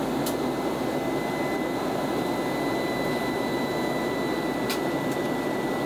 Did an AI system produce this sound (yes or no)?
no